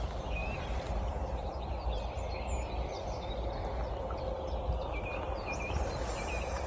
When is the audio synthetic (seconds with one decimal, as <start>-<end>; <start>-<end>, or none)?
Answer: none